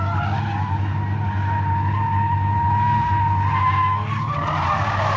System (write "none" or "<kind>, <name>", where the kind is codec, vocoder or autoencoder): none